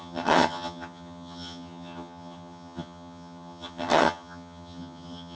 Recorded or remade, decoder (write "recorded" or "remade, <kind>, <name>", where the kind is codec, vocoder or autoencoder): remade, vocoder, HiFi-GAN